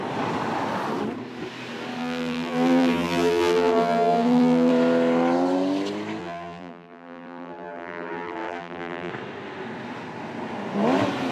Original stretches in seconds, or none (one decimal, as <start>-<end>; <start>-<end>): 0.0-2.0; 4.7-6.2; 9.1-11.3